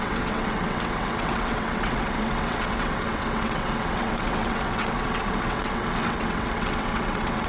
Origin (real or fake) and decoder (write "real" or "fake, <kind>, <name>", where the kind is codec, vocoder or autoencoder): fake, vocoder, WaveNeXt